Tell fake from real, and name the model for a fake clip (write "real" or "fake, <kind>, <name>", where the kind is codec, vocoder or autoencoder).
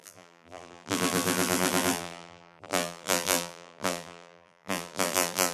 fake, vocoder, BigVGAN v2